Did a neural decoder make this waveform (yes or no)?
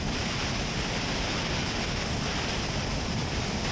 yes